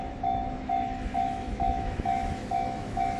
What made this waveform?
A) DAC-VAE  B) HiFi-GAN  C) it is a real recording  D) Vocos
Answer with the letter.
A